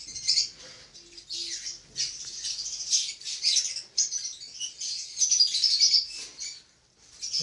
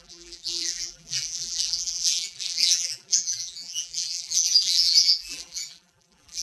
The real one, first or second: first